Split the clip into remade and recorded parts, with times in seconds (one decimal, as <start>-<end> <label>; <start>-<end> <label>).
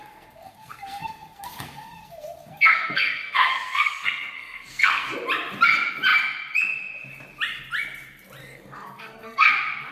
0.0-5.1 remade; 5.1-8.4 recorded; 8.4-9.5 remade; 9.5-9.9 recorded